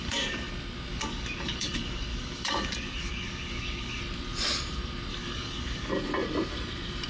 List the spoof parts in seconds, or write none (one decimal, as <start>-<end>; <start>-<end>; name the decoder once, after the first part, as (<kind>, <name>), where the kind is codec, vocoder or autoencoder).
0.0-0.5 (codec, DAC); 0.9-4.0; 5.1-5.9